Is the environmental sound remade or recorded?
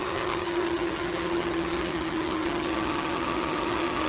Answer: remade